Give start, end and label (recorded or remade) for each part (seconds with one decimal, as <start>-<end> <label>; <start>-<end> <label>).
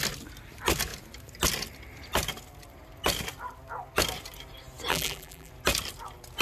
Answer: 0.0-4.9 recorded; 4.9-5.5 remade; 5.5-6.4 recorded